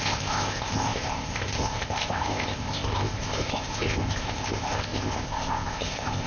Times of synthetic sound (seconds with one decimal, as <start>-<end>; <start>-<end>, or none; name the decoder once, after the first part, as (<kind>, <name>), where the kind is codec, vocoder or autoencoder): 0.0-6.3 (codec, ZipCodec)